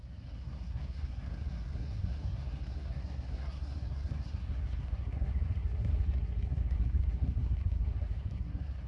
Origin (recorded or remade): remade